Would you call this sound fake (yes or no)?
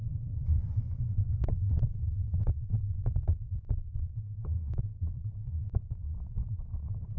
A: yes